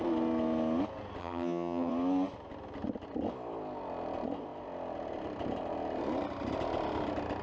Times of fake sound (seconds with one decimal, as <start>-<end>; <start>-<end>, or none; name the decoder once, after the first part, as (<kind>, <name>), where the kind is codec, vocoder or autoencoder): 1.2-1.9 (vocoder, HiFi-GAN)